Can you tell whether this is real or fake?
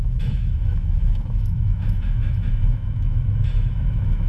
fake